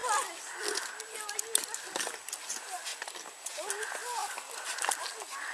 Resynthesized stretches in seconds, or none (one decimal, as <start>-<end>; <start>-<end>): none